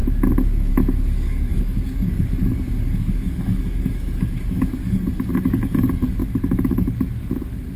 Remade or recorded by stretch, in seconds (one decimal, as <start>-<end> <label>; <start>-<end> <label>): 0.0-0.7 recorded; 0.7-7.8 remade